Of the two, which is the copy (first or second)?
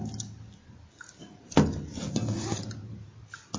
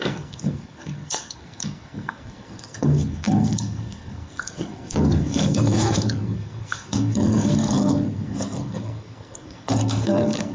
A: second